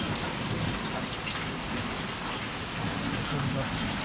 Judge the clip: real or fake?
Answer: real